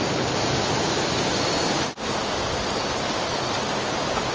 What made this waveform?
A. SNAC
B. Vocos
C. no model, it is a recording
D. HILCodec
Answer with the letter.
C